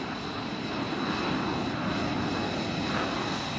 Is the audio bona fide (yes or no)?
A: yes